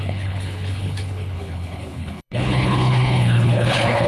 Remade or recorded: remade